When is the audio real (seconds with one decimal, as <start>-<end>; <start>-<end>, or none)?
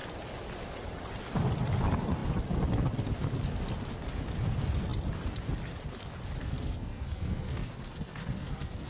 0.0-6.4